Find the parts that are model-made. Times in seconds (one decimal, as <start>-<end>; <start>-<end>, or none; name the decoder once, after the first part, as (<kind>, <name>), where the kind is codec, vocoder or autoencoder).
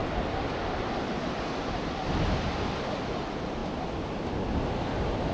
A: none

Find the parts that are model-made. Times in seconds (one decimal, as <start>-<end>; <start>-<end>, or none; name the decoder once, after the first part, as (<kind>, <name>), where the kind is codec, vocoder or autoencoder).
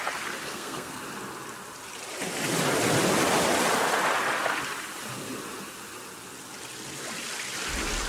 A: 0.4-1.0 (codec, SNAC)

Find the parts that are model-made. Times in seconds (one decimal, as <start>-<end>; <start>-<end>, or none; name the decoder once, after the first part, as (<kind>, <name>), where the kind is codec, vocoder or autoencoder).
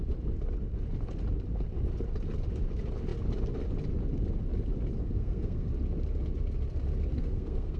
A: 5.0-5.7 (codec, SNAC); 7.1-7.8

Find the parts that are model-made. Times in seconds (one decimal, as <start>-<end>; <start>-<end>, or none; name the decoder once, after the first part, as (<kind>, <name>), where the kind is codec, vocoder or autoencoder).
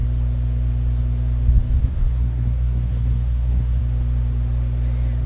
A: 1.8-3.8 (codec, SNAC)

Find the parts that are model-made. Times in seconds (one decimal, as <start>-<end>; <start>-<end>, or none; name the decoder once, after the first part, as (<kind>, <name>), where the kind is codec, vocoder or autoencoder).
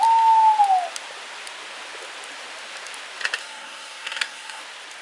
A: 3.4-4.6 (codec, SNAC)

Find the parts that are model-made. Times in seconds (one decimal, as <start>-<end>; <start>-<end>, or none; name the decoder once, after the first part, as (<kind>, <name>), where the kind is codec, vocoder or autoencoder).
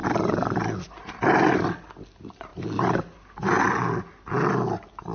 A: none